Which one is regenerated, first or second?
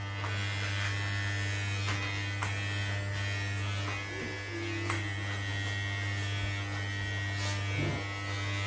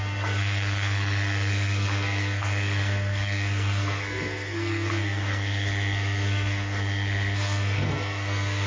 second